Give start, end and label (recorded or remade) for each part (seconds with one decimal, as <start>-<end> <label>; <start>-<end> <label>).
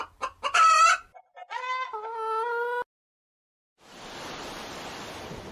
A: 0.0-5.5 recorded